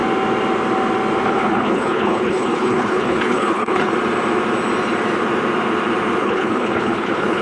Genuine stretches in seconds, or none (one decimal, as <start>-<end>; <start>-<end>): 0.0-1.3; 3.9-6.2